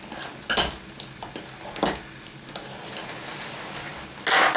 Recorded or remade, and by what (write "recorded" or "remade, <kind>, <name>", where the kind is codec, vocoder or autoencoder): recorded